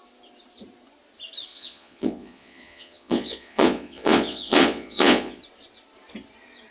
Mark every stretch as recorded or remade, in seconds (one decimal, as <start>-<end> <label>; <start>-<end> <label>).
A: 0.0-1.5 recorded; 1.5-5.4 remade; 5.4-6.7 recorded